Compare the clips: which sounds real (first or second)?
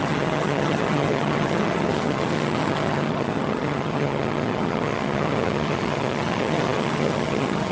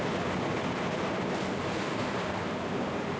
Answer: second